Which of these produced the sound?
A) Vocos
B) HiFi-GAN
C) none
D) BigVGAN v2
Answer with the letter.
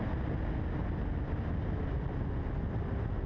C